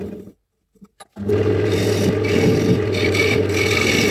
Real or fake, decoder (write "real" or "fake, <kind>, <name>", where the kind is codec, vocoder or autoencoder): real